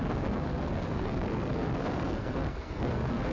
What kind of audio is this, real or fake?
fake